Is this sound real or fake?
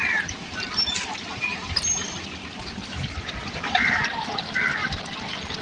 fake